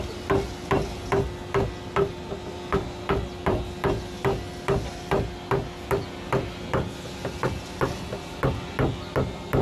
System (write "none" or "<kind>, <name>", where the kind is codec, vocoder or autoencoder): none